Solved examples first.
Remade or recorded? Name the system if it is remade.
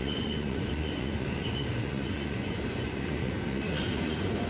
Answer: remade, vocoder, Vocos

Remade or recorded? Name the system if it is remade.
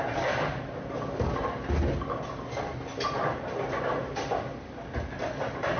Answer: recorded